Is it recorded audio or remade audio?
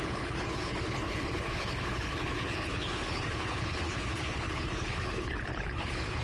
remade